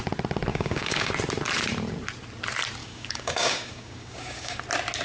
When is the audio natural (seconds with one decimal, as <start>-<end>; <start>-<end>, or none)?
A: 0.0-0.5; 1.1-2.8; 4.6-5.0